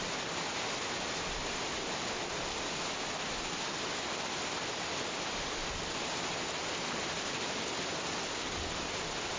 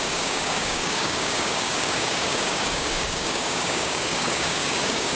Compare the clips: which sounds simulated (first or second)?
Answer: second